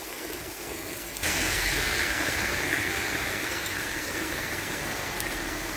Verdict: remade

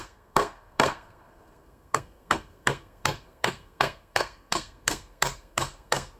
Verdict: remade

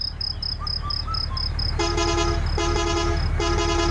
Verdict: recorded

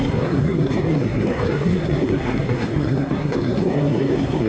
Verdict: remade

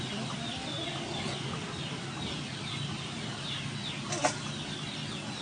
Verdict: recorded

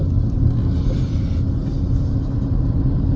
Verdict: recorded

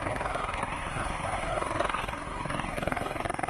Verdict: remade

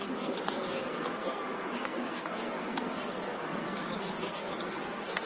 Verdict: remade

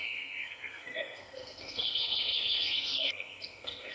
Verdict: remade